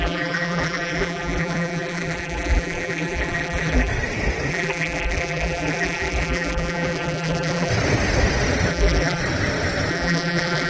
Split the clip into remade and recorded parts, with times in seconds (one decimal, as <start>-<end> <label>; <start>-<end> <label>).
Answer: 0.0-3.9 remade; 3.9-4.5 recorded; 4.5-7.7 remade; 7.7-8.7 recorded; 8.7-9.2 remade; 9.2-9.9 recorded; 9.9-10.7 remade